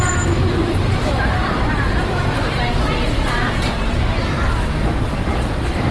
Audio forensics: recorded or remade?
remade